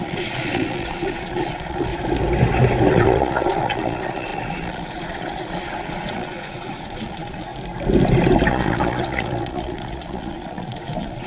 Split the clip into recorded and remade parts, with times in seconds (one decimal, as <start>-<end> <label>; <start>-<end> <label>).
0.0-1.9 remade; 1.9-2.9 recorded; 2.9-7.5 remade; 7.5-8.5 recorded; 8.5-11.3 remade